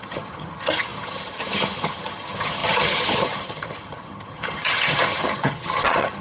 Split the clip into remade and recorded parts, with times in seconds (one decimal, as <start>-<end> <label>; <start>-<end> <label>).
0.0-6.2 remade